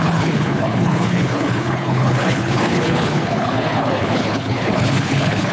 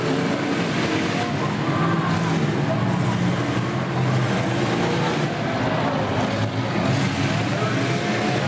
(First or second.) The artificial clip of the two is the first